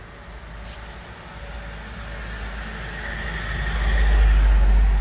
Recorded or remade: recorded